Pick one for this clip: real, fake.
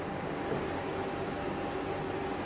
real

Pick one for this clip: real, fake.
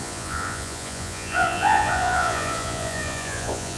fake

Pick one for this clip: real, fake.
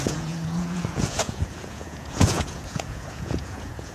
fake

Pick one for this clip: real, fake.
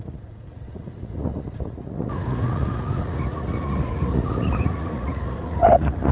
fake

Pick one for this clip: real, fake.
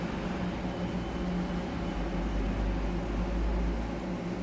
real